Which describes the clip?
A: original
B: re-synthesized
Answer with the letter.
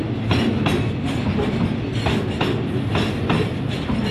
A